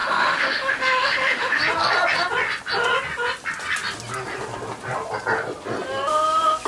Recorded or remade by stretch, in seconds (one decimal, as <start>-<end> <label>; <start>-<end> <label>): 0.0-1.6 remade; 1.6-6.7 recorded